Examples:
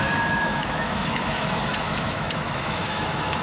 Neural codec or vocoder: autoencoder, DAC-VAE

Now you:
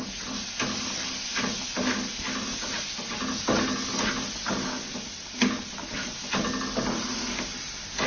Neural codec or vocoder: none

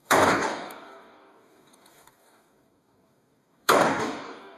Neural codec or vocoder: codec, DAC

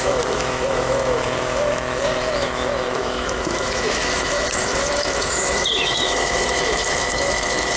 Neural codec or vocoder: autoencoder, DAC-VAE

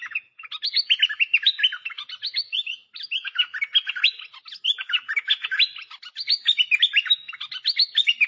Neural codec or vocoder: none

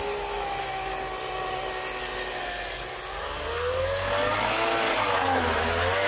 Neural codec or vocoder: none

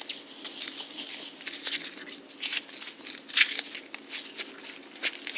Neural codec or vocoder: none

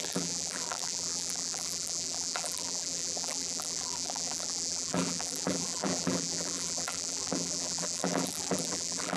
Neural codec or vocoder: vocoder, BigVGAN v2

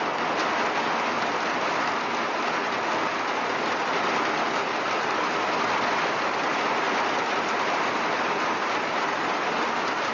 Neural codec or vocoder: none